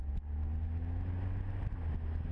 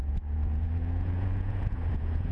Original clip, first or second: first